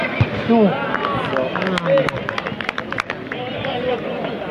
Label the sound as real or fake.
real